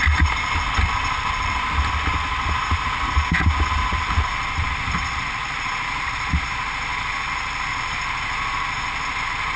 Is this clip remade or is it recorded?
recorded